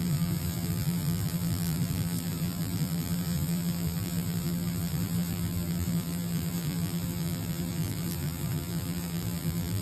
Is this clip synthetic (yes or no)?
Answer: yes